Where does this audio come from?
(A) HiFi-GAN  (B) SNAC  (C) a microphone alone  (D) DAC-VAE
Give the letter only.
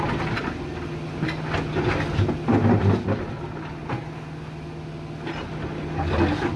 C